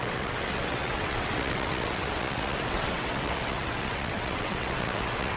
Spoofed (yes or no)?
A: yes